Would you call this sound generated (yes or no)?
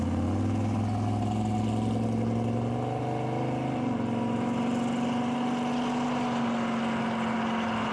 no